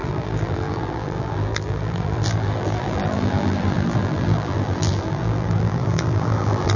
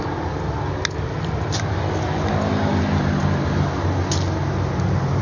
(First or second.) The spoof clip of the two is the first